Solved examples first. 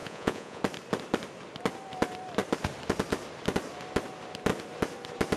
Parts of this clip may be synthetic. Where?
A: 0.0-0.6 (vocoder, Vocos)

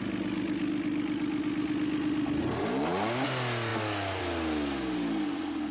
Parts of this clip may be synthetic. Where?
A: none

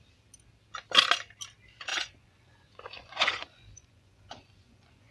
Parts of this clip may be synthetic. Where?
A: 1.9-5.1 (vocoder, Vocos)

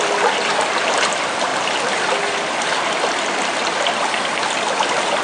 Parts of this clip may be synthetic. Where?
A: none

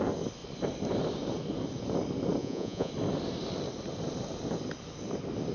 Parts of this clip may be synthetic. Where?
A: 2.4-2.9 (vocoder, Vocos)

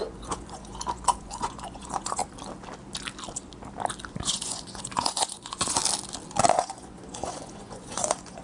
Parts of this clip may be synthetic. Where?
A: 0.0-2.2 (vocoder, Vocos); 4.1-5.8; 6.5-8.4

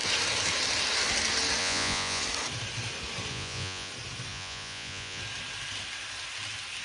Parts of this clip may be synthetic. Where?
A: 1.6-2.2 (vocoder, Vocos); 3.3-3.9; 4.3-5.2